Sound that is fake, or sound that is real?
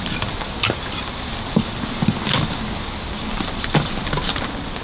real